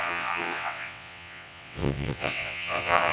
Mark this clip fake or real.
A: fake